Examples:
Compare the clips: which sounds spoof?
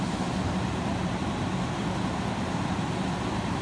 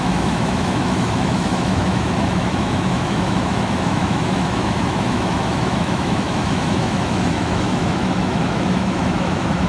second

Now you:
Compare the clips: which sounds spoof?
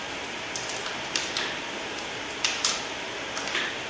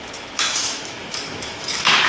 second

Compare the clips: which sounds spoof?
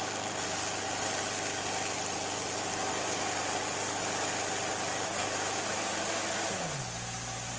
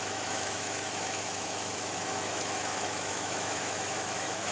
second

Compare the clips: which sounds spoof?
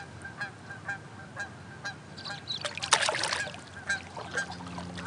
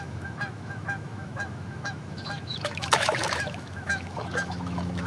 second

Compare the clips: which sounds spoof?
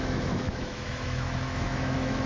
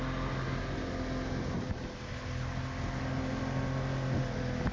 first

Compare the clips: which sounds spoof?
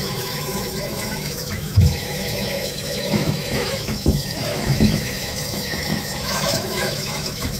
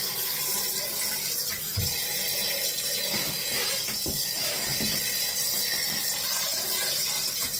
first